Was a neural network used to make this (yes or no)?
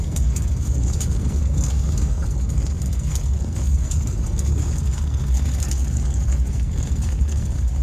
yes